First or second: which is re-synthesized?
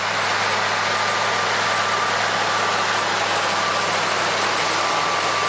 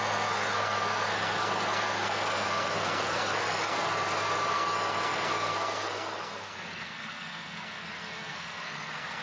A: second